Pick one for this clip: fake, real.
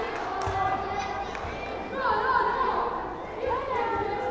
real